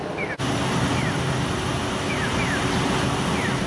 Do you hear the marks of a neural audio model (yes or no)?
no